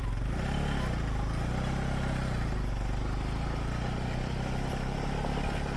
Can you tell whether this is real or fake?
real